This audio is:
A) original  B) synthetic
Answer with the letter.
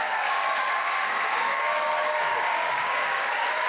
B